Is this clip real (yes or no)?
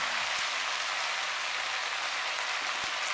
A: yes